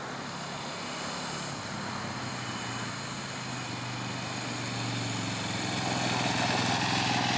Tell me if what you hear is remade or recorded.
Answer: recorded